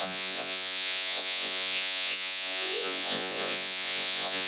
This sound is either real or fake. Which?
fake